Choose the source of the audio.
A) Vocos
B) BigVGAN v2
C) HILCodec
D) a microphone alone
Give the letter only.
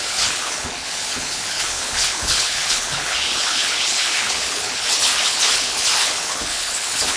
C